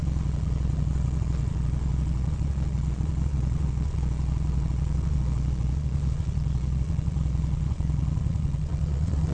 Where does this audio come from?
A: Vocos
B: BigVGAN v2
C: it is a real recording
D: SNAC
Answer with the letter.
A